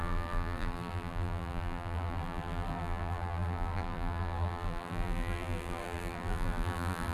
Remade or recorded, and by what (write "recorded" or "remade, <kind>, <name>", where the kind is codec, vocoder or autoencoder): remade, vocoder, BigVGAN v2